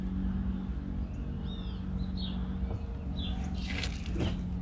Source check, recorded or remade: recorded